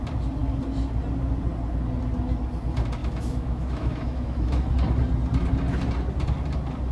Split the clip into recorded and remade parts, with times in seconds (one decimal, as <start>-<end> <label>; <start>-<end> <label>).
0.0-3.0 recorded; 3.0-4.7 remade; 4.7-6.9 recorded